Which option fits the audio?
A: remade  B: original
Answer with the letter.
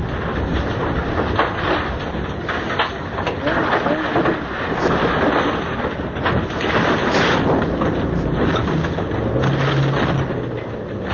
B